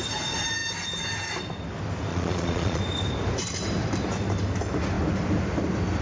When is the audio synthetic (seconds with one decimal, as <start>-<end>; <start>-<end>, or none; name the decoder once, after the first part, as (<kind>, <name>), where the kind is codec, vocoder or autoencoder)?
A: 2.1-2.8 (vocoder, Vocos)